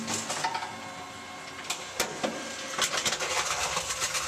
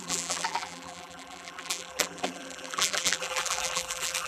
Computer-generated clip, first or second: second